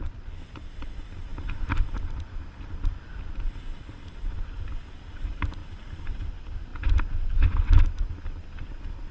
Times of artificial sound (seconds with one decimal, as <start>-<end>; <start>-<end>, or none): none